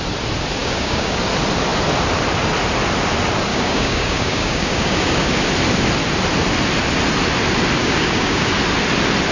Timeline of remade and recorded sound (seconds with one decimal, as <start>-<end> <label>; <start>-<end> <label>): 0.0-0.6 recorded; 0.6-1.2 remade; 1.2-3.5 recorded; 3.5-5.4 remade; 5.4-7.8 recorded; 7.8-8.5 remade; 8.5-9.3 recorded